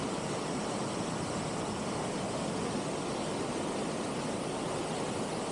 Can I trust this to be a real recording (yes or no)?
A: yes